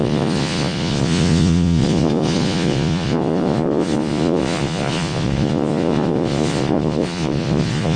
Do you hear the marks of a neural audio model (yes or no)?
yes